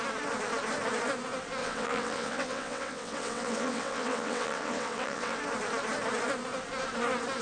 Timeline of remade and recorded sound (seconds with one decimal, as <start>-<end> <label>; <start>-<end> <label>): 0.0-1.6 recorded; 1.6-5.4 remade; 5.4-7.4 recorded